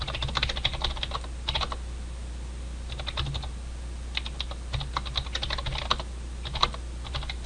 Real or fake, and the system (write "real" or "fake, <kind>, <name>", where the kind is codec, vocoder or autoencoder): real